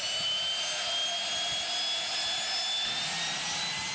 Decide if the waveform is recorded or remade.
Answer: recorded